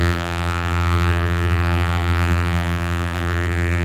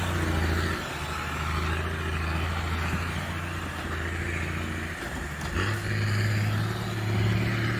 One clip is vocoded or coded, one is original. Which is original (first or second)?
second